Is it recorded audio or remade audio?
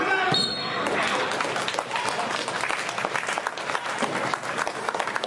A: recorded